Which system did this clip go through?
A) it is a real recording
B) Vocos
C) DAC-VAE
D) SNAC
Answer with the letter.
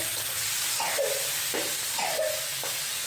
A